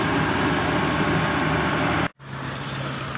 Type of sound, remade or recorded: recorded